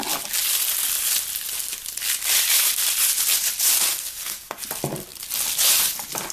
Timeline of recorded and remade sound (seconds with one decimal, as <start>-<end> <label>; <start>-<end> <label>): 0.0-3.9 recorded; 3.9-4.6 remade; 4.6-6.3 recorded